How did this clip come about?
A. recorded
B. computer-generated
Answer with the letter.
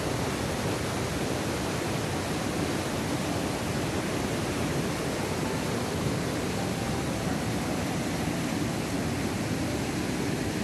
A